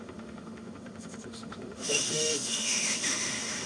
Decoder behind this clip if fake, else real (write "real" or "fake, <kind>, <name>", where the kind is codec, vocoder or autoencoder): fake, autoencoder, DAC-VAE